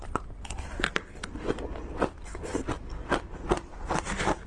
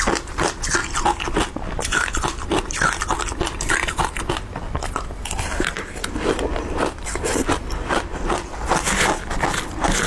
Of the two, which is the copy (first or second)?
second